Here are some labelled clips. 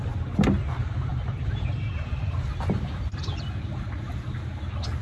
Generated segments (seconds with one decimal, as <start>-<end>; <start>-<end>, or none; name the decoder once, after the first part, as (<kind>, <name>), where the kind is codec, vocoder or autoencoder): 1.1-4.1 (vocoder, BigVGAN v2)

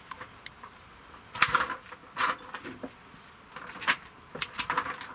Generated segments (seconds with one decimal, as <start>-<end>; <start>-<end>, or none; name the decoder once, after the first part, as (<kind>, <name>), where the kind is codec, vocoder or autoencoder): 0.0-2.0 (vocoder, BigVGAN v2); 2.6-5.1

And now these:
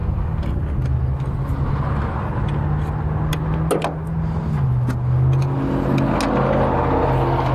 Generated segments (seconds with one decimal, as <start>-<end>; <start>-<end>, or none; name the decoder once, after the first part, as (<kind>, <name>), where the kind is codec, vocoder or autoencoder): 0.0-0.6 (vocoder, BigVGAN v2)

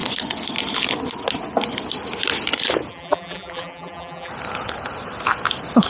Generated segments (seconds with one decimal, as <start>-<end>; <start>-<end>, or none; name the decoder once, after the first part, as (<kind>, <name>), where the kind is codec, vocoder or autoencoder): 2.9-4.3 (vocoder, BigVGAN v2)

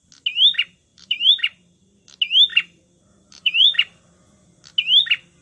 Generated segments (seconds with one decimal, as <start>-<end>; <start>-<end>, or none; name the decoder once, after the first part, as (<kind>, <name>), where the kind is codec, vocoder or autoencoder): 0.9-1.9 (vocoder, BigVGAN v2); 2.5-4.0

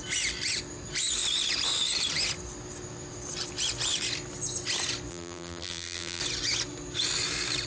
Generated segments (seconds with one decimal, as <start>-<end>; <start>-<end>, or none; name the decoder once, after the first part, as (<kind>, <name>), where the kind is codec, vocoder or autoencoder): 5.1-6.2 (vocoder, BigVGAN v2)

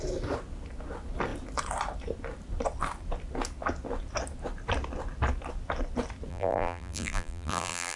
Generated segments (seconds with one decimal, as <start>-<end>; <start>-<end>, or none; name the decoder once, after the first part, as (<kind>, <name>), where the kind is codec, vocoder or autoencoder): 6.3-8.0 (vocoder, BigVGAN v2)

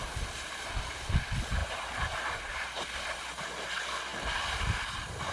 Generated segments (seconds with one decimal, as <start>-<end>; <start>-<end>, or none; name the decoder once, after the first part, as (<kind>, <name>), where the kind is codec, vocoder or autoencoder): 1.6-2.8 (vocoder, BigVGAN v2)